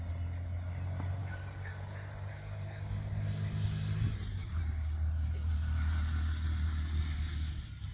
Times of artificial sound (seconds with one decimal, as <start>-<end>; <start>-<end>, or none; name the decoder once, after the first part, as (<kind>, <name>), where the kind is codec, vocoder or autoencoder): 1.2-1.7 (codec, DAC); 2.3-3.1